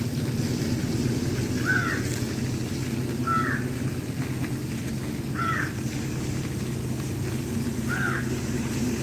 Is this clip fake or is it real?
real